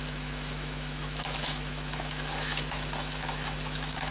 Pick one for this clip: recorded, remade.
remade